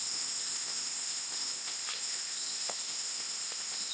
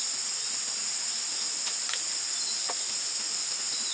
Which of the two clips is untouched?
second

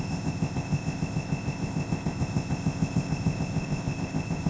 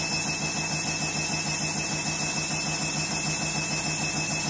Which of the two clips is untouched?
second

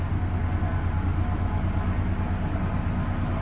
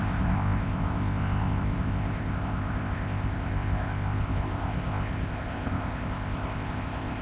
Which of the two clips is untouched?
first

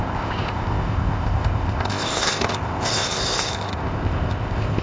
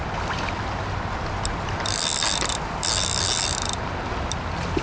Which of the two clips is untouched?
second